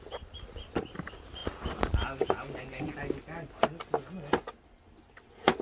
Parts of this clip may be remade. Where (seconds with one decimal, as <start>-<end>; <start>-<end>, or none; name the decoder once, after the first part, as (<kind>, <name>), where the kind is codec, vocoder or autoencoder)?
none